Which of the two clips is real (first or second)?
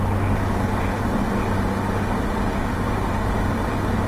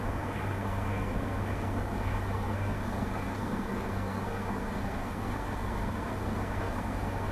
first